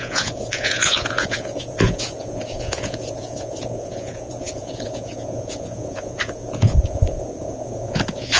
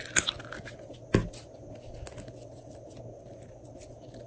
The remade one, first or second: first